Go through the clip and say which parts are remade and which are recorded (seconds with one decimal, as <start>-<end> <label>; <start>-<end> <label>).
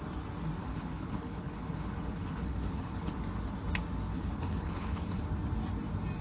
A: 0.0-0.6 recorded; 0.6-3.1 remade; 3.1-4.1 recorded; 4.1-5.2 remade; 5.2-6.2 recorded